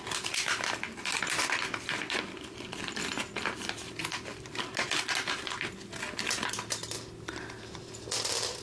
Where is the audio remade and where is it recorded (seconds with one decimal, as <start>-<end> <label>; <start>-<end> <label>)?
0.0-8.6 recorded